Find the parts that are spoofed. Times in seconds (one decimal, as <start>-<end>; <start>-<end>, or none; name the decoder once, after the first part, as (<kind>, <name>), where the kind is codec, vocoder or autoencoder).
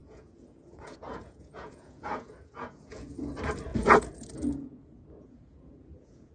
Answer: 0.0-3.3 (vocoder, Vocos); 3.7-6.3